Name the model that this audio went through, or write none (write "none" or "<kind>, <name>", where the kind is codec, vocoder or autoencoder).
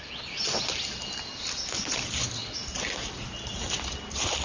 none